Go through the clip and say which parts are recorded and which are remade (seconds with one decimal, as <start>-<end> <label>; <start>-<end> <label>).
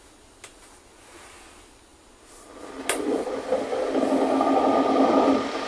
0.0-5.7 recorded